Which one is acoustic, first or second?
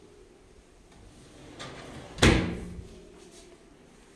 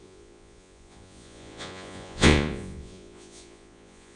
first